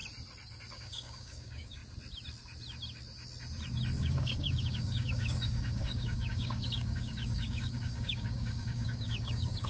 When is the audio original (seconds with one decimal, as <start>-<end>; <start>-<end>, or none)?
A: 0.0-0.7; 1.8-4.0